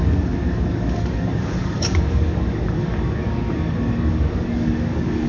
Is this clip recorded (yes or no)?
no